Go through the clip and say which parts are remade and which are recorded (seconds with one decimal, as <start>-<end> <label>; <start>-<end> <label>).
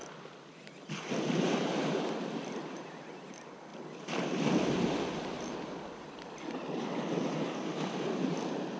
0.0-8.8 recorded